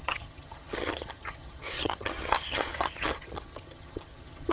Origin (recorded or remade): remade